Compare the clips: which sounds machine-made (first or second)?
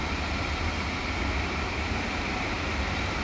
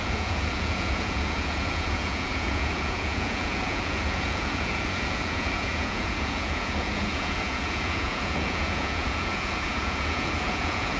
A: second